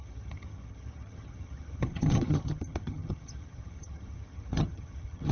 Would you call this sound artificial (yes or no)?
yes